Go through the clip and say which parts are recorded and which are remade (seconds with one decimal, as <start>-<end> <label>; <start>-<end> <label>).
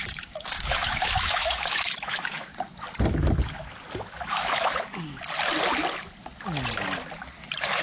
0.0-2.5 remade; 2.5-4.3 recorded; 4.3-4.9 remade; 4.9-7.8 recorded